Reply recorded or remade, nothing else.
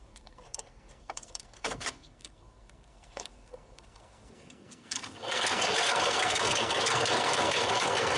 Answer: remade